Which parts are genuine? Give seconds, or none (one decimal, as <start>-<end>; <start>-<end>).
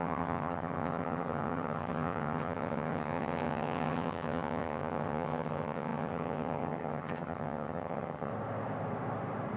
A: 8.3-9.6